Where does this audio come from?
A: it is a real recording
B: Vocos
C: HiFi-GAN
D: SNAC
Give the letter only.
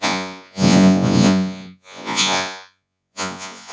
B